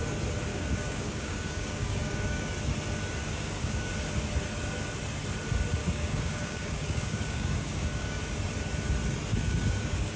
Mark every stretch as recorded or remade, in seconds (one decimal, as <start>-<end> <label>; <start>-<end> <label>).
0.0-0.5 recorded; 0.5-2.5 remade; 2.5-3.2 recorded; 3.2-3.9 remade; 3.9-5.8 recorded; 5.8-8.2 remade; 8.2-9.3 recorded; 9.3-10.2 remade